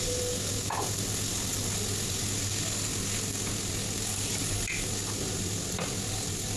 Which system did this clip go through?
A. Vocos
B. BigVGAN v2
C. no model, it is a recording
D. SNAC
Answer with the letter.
C